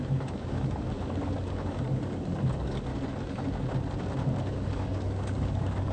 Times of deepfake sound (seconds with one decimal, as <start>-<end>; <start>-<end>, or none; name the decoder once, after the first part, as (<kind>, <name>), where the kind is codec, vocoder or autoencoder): 0.0-2.9 (codec, DAC); 4.5-5.9